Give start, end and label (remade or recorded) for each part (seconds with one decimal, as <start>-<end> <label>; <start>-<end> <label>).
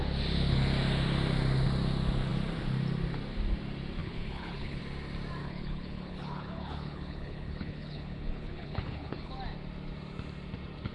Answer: 0.0-4.0 recorded; 4.0-4.8 remade; 4.8-5.4 recorded; 5.4-9.3 remade; 9.3-10.9 recorded